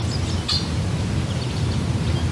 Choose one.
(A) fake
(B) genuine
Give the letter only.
B